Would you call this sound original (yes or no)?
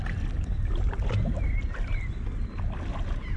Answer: yes